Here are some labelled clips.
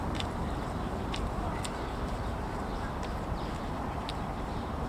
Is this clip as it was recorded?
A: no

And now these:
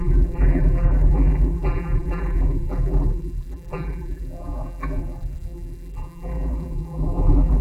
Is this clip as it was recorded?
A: no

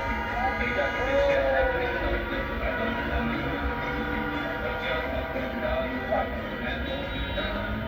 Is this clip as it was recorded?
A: yes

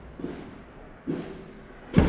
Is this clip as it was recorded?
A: yes